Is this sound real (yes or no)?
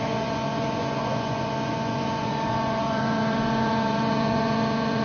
no